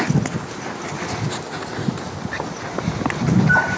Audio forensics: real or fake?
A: real